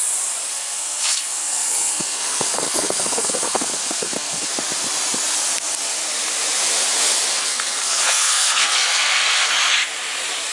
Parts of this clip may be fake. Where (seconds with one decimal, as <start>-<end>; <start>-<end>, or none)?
0.5-4.5; 7.3-9.5